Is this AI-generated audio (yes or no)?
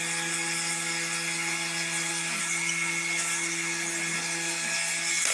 no